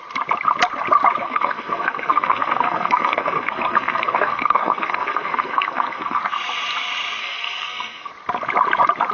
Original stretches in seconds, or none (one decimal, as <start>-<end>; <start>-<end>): 0.0-1.2; 6.2-7.2; 8.1-9.1